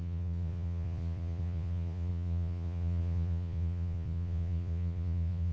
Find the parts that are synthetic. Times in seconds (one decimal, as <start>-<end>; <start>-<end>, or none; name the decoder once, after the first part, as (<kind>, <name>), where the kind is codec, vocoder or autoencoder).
0.0-5.5 (vocoder, Vocos)